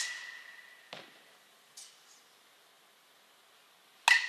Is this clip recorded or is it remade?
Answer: recorded